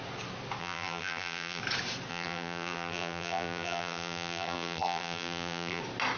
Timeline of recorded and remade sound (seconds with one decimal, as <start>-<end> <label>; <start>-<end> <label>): 0.0-0.6 recorded; 0.6-1.6 remade; 1.6-2.1 recorded; 2.1-5.8 remade; 5.8-6.2 recorded